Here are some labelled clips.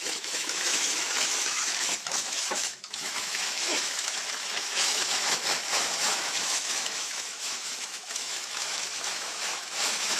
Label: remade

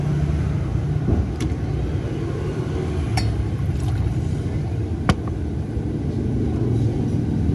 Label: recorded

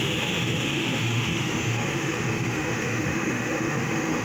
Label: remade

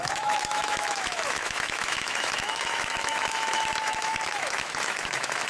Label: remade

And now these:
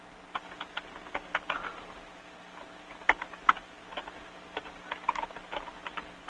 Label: recorded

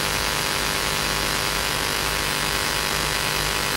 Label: remade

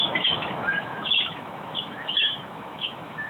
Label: remade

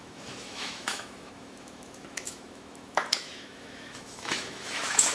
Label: remade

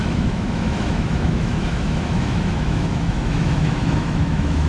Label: remade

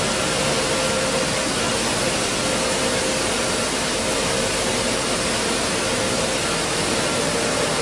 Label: recorded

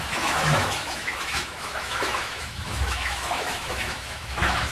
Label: remade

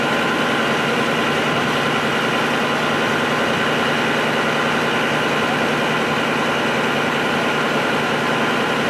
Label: recorded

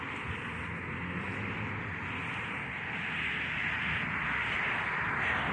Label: recorded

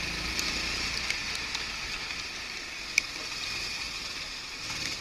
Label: recorded